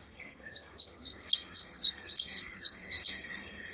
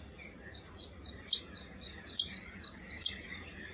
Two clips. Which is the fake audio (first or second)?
first